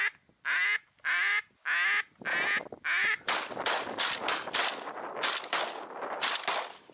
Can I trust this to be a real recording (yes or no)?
yes